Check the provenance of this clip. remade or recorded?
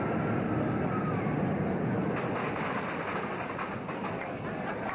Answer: recorded